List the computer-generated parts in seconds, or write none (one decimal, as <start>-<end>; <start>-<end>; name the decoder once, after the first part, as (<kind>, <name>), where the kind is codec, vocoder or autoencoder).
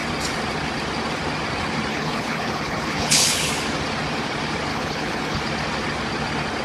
1.9-3.5 (codec, HILCodec); 4.7-5.4